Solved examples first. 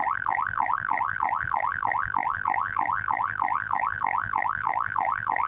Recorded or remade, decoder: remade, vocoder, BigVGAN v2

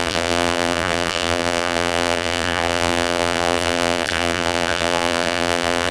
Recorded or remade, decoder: remade, vocoder, BigVGAN v2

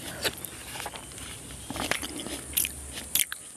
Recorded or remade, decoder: remade, vocoder, BigVGAN v2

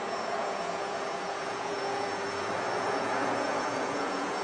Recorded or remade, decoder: remade, vocoder, Vocos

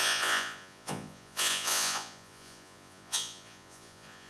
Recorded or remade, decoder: remade, vocoder, Vocos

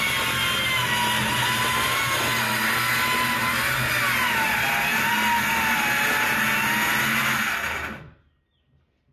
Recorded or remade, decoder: recorded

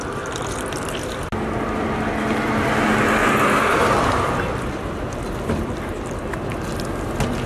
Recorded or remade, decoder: recorded